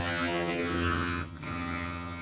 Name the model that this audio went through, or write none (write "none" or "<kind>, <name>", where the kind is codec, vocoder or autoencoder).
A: vocoder, HiFi-GAN